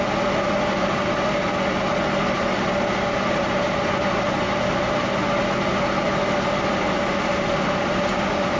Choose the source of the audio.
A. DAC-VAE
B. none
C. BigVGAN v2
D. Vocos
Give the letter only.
B